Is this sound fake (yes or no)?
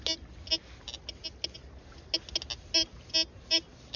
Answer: no